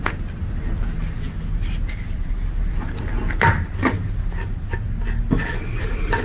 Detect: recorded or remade recorded